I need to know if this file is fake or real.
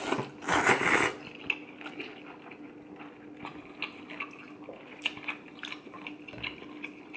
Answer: real